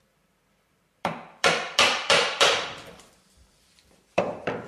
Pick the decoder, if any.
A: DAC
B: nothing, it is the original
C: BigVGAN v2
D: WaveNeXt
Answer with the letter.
C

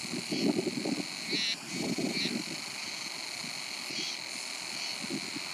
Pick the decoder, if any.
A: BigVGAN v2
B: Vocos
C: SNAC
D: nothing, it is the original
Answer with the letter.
D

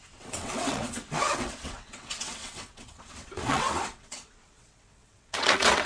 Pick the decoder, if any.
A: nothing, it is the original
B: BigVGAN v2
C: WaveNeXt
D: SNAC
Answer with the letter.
C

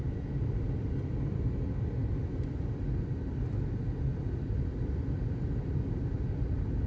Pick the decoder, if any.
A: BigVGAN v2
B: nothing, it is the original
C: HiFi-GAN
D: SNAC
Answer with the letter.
B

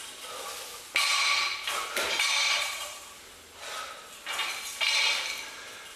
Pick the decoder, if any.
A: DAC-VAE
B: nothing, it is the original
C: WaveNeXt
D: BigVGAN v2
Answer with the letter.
B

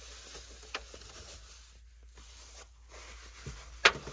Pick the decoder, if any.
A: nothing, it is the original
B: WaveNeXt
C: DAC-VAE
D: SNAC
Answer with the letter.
A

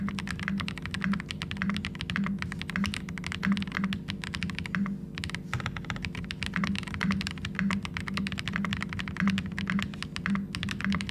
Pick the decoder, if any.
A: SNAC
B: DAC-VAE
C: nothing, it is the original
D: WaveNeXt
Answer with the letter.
C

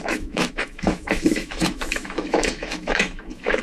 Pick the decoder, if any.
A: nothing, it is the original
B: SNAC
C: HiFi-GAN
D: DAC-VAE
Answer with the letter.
D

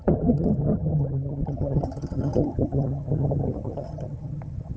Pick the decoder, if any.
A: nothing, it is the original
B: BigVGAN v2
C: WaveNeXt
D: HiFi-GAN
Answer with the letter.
D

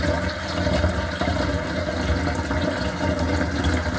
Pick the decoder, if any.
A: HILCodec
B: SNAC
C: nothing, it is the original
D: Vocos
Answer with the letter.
C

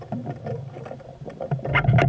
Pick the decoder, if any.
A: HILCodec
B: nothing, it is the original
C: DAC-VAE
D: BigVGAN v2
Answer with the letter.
B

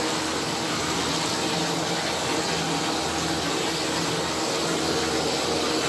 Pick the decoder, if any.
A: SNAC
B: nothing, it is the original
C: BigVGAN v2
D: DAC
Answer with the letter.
B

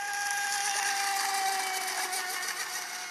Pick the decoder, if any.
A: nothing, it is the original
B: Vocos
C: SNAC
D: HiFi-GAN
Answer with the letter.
A